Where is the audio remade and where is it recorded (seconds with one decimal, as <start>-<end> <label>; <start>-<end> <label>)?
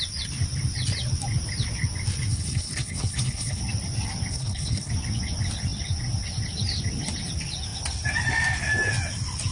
0.0-2.3 recorded; 2.3-3.6 remade; 3.6-4.3 recorded; 4.3-4.9 remade; 4.9-9.5 recorded